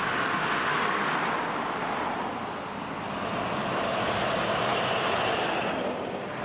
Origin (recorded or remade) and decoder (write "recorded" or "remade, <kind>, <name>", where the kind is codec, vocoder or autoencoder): recorded